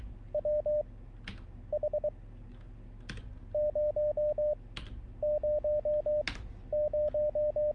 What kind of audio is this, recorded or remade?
recorded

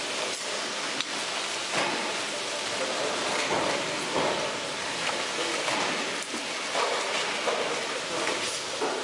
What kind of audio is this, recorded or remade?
recorded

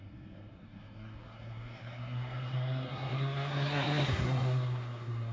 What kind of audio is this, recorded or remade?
remade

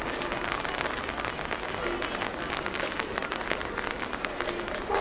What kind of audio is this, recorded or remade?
recorded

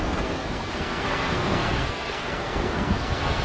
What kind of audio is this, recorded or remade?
remade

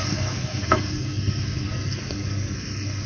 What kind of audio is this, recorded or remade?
remade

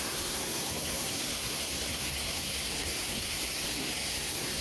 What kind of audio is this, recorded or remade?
remade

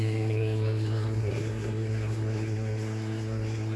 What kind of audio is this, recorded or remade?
remade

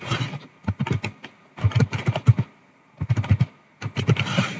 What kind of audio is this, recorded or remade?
recorded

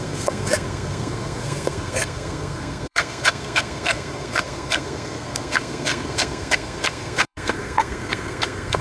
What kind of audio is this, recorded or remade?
remade